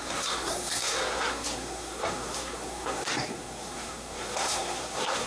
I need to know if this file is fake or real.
fake